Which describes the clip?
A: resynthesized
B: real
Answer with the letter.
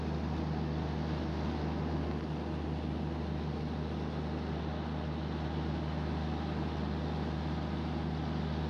B